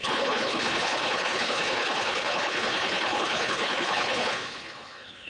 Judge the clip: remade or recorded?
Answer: remade